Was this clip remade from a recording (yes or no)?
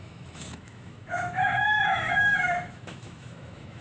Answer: yes